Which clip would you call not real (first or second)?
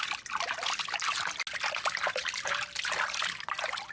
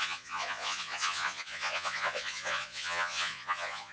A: second